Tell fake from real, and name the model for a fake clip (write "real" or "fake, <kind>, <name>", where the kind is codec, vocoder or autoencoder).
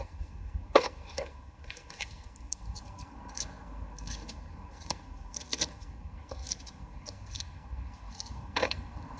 fake, codec, SNAC